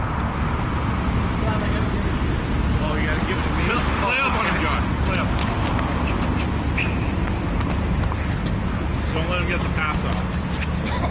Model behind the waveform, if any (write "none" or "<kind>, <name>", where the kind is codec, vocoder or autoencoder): none